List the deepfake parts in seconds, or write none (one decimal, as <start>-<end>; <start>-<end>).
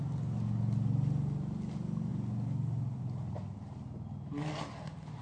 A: none